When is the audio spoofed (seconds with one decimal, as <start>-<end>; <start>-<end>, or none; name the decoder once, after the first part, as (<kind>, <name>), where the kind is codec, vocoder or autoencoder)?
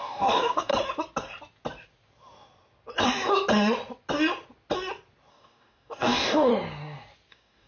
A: 0.0-0.7 (codec, DAC); 5.3-6.5; 7.3-7.7